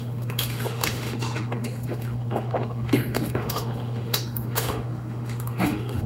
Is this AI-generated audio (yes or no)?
yes